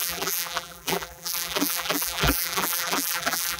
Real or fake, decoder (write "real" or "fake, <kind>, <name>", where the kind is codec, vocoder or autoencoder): fake, vocoder, BigVGAN v2